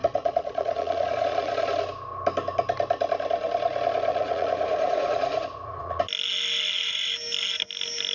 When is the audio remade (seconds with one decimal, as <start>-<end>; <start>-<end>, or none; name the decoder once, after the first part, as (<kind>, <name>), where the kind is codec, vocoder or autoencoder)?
0.0-1.5 (vocoder, Vocos); 4.1-6.0